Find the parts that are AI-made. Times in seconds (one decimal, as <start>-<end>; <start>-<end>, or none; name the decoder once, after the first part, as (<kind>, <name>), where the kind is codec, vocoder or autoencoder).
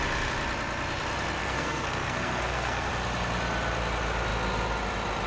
1.4-2.9 (codec, SNAC)